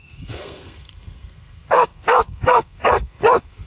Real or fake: fake